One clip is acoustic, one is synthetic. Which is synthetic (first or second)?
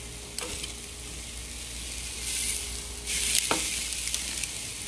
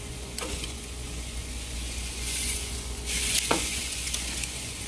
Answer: second